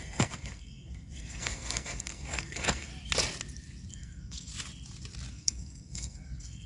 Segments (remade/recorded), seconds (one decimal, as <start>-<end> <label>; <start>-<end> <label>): 0.0-2.9 remade; 2.9-3.9 recorded; 3.9-4.5 remade; 4.5-5.3 recorded; 5.3-6.7 remade